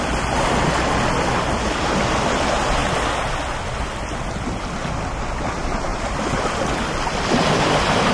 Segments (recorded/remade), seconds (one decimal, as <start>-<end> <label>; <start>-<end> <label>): 0.0-5.9 recorded; 5.9-8.1 remade